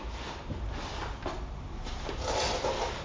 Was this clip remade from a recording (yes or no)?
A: no